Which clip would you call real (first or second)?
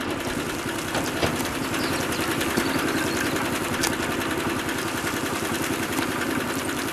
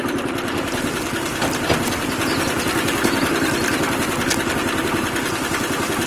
first